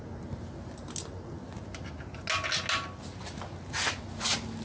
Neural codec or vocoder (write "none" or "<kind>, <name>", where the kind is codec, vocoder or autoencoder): none